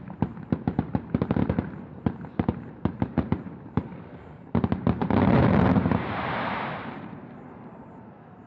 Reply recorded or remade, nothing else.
remade